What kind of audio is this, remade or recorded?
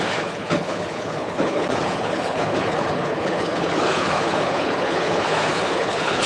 remade